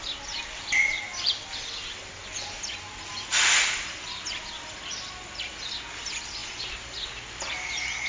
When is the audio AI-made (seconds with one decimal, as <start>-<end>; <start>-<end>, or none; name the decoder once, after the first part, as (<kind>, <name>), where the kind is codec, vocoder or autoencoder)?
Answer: none